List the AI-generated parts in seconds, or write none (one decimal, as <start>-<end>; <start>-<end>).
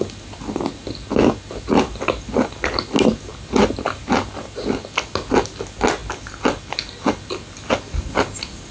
none